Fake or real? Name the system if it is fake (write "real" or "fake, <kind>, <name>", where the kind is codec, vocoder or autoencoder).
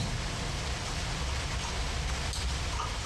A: fake, vocoder, BigVGAN v2